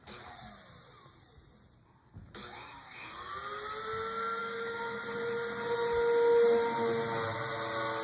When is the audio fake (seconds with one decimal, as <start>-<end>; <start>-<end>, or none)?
2.4-3.3; 4.4-5.0